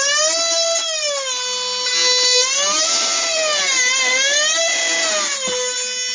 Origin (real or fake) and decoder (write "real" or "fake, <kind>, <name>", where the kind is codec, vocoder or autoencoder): real